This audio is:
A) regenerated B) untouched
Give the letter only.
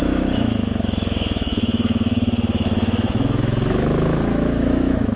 A